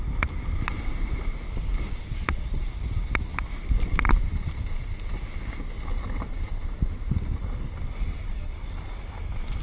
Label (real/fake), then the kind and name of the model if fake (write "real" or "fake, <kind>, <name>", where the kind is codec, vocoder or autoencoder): real